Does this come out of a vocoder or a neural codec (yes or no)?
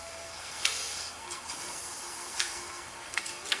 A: yes